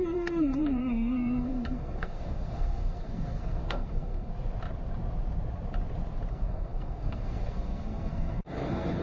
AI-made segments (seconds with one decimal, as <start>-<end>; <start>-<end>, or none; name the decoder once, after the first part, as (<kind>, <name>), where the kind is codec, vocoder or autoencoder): 0.0-4.3 (codec, SNAC); 6.3-9.0